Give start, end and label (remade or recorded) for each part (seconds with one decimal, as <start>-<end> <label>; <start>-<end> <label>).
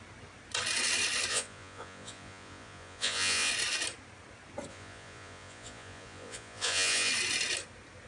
0.0-1.3 recorded; 1.3-3.5 remade; 3.5-4.7 recorded; 4.7-7.1 remade; 7.1-8.1 recorded